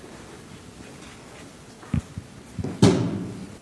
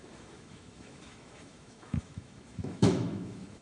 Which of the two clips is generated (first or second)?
second